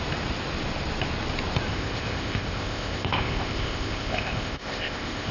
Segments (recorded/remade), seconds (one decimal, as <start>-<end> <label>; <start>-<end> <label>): 0.0-1.7 recorded; 1.7-5.3 remade